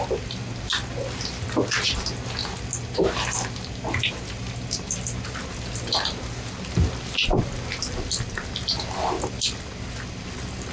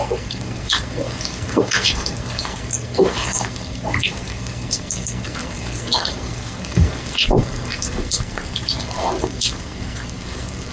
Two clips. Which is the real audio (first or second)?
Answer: first